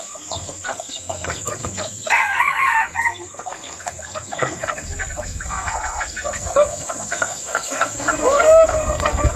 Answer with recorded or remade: remade